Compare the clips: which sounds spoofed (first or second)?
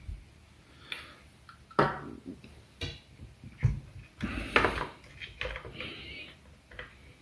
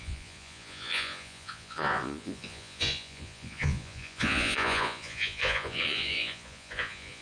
second